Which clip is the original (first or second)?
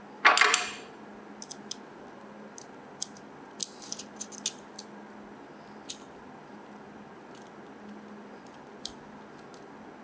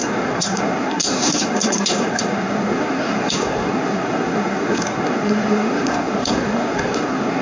first